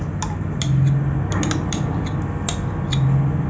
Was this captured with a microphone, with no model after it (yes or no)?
yes